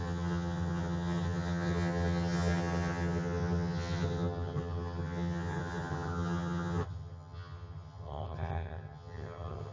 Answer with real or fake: fake